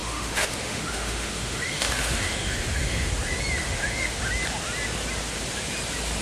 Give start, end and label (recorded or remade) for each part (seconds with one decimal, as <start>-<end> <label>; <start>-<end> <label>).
0.0-3.1 remade; 3.1-3.6 recorded; 3.6-4.2 remade; 4.2-6.2 recorded